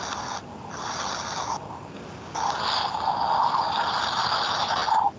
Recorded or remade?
recorded